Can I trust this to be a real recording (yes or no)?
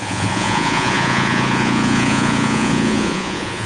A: no